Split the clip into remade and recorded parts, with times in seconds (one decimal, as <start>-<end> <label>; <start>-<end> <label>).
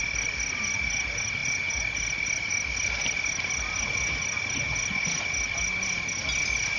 0.0-6.8 recorded